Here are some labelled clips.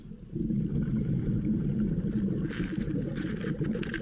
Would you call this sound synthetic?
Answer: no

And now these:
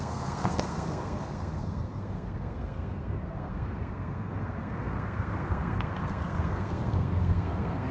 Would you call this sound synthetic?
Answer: yes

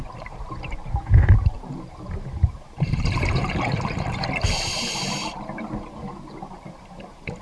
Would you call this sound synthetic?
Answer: yes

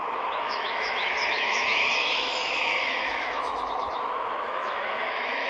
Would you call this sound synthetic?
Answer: yes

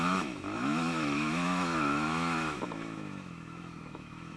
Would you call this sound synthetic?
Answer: yes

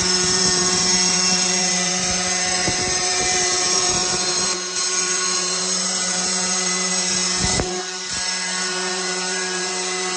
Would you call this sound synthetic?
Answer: yes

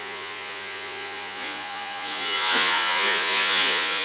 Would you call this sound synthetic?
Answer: yes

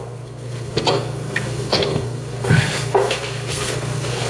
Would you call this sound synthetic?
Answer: yes